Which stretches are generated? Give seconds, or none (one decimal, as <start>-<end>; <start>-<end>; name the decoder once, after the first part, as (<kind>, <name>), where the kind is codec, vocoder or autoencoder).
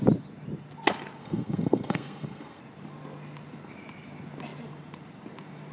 1.2-2.6 (codec, SNAC)